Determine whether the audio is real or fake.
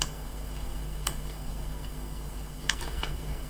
fake